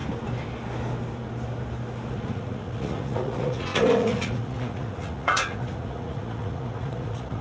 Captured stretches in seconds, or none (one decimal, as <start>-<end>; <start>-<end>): 0.0-2.1